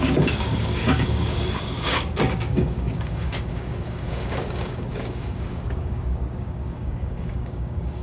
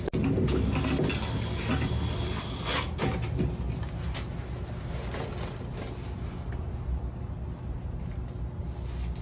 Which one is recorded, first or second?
second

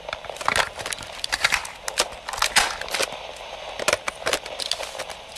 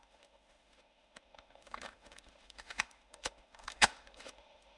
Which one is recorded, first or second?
first